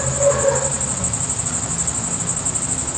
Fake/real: real